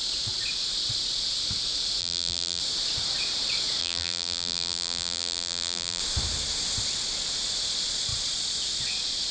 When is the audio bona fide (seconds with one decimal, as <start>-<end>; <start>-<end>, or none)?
0.0-2.0; 2.6-3.8; 6.0-9.3